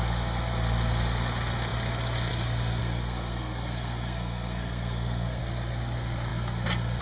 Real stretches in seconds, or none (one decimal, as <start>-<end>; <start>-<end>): 0.0-2.8; 5.4-7.0